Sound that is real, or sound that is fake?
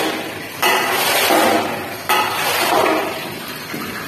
real